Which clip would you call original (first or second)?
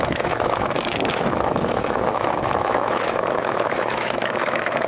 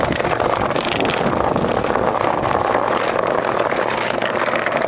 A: second